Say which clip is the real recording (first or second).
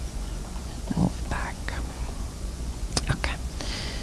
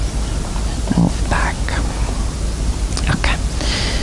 second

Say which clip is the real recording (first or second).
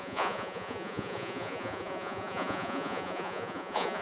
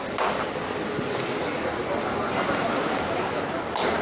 second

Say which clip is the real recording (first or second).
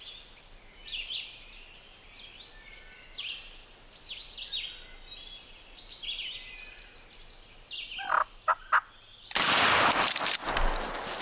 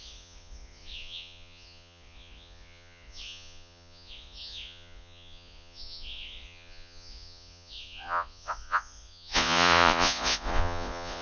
first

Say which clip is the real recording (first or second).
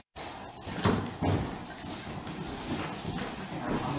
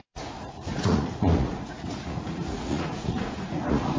first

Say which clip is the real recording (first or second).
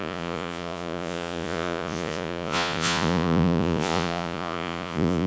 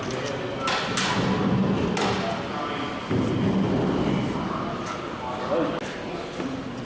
second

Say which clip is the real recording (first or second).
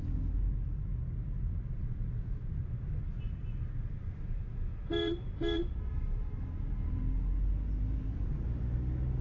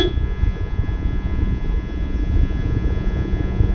first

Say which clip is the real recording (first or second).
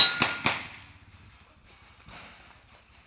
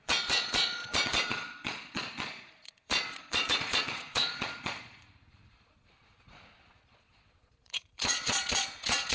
first